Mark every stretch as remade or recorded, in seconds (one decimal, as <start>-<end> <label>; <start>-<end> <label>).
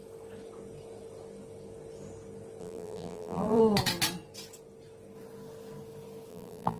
0.0-2.6 recorded; 2.6-3.6 remade; 3.6-6.3 recorded; 6.3-6.8 remade